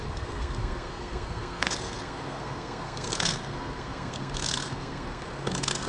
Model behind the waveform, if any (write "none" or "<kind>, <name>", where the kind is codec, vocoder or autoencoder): codec, SNAC